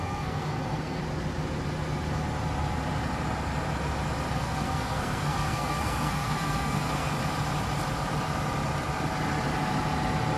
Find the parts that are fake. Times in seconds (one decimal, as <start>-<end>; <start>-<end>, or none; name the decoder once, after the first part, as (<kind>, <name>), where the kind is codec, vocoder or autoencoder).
0.0-1.0 (codec, SNAC); 4.3-7.1